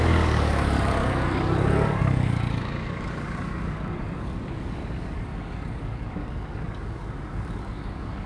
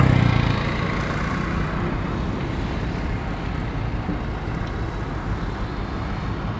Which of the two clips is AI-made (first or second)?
first